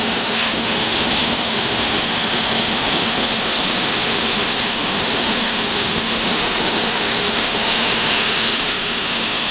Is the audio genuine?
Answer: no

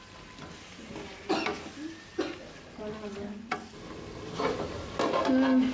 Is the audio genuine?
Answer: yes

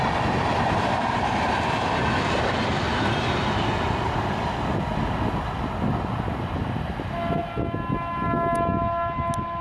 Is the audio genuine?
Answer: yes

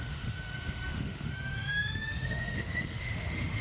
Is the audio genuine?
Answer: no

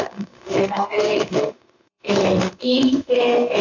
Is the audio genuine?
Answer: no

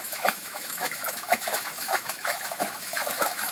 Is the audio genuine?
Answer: no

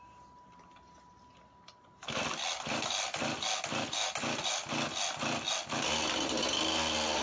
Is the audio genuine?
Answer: yes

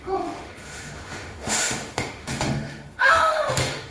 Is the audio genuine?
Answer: no